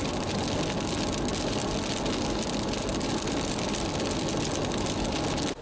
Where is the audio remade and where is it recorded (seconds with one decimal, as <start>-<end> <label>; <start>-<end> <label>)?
0.0-5.6 recorded